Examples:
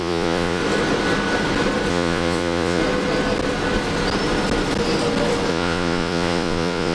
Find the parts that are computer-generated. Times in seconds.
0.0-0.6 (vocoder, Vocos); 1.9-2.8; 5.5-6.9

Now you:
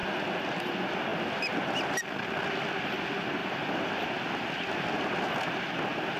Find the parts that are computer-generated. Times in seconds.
3.4-4.0 (vocoder, BigVGAN v2)

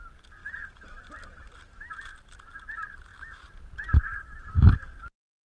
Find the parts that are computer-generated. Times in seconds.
0.4-1.2 (vocoder, BigVGAN v2); 3.1-4.7

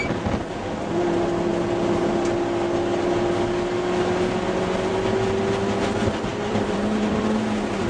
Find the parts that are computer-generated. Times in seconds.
6.3-7.2 (vocoder, BigVGAN v2)

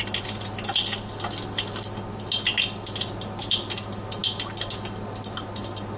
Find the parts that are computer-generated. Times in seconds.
none

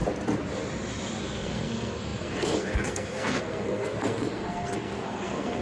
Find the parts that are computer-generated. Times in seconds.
1.2-5.6 (codec, SNAC)

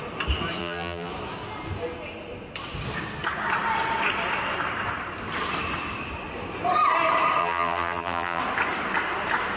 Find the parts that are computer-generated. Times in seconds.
0.6-1.1 (vocoder, BigVGAN v2); 7.4-8.4